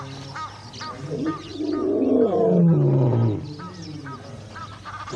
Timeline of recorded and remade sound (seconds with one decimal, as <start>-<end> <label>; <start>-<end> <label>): 0.0-5.2 recorded